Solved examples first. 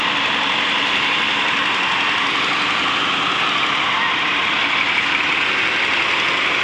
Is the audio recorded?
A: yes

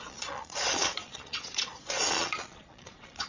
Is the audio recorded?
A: no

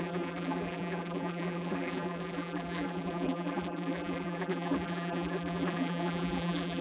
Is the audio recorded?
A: no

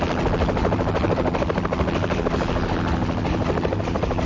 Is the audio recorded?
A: yes